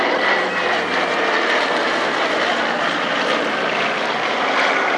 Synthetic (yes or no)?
yes